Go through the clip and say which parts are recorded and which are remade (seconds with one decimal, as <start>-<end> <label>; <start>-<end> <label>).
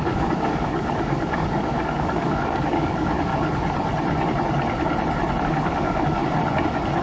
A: 0.0-3.3 remade; 3.3-5.4 recorded; 5.4-6.2 remade; 6.2-7.0 recorded